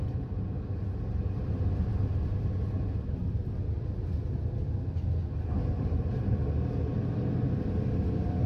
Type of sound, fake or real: real